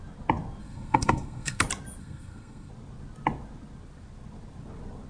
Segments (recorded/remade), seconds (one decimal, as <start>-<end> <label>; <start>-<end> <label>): 0.0-0.6 recorded; 0.6-1.6 remade; 1.6-2.0 recorded; 2.0-2.7 remade; 2.7-5.1 recorded